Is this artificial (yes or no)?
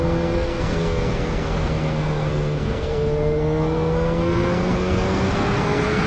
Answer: yes